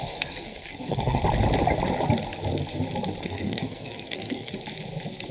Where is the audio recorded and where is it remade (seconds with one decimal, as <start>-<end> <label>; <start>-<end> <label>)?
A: 0.0-1.2 remade; 1.2-3.2 recorded; 3.2-4.5 remade; 4.5-5.3 recorded